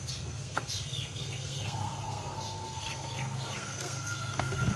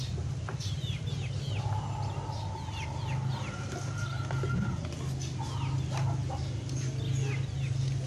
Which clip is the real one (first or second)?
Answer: second